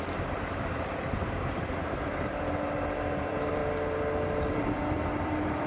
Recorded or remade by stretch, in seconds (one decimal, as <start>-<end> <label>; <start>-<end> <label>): 0.0-3.6 remade; 3.6-4.5 recorded; 4.5-5.7 remade